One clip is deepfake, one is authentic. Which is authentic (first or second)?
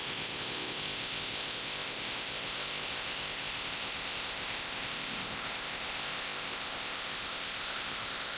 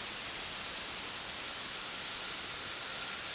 second